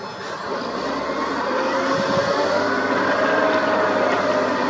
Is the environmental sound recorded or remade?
recorded